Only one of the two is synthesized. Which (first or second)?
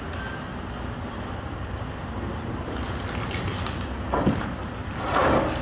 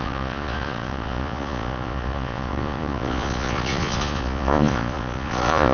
second